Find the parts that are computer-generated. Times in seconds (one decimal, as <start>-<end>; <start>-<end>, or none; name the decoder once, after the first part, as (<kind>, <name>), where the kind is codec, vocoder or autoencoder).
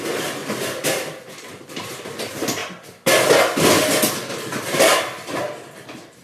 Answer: 0.4-1.5 (vocoder, BigVGAN v2); 4.3-4.8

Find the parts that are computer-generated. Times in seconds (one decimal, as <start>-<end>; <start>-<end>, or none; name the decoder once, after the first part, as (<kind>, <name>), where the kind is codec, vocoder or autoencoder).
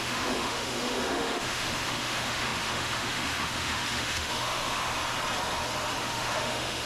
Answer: 0.0-4.9 (autoencoder, DAC-VAE); 6.0-6.9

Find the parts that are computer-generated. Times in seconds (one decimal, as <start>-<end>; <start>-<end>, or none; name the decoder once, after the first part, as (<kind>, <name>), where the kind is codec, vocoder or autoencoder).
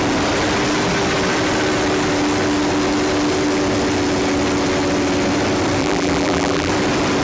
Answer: 5.8-6.7 (vocoder, BigVGAN v2)